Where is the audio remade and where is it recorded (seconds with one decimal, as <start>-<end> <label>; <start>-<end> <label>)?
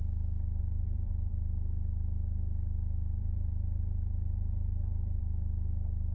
0.0-0.6 recorded; 0.6-1.3 remade; 1.3-3.2 recorded; 3.2-5.2 remade; 5.2-6.1 recorded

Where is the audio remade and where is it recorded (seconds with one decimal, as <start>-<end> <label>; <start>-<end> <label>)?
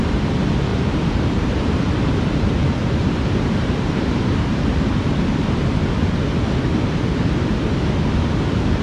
0.0-0.7 recorded; 0.7-1.9 remade; 1.9-3.0 recorded; 3.0-4.9 remade; 4.9-8.8 recorded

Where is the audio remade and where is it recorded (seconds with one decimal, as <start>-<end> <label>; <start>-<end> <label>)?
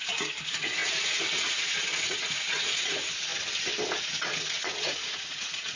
0.0-3.3 remade; 3.3-4.0 recorded; 4.0-5.8 remade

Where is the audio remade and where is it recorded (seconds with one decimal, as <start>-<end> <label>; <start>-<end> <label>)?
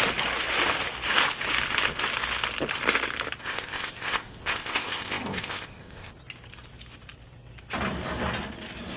0.0-3.4 recorded; 3.4-6.1 remade; 6.1-9.0 recorded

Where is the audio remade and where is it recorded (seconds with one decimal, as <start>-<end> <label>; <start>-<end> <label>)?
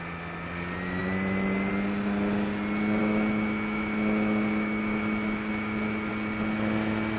0.0-3.0 recorded; 3.0-6.1 remade; 6.1-7.2 recorded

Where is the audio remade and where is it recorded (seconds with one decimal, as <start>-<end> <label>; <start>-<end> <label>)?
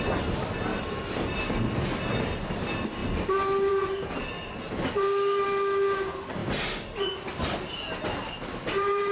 0.0-9.1 recorded